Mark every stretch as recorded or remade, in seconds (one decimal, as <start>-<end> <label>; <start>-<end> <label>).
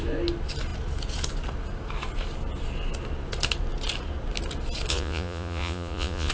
0.0-4.9 recorded; 4.9-6.3 remade